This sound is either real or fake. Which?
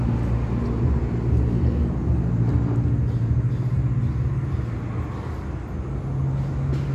real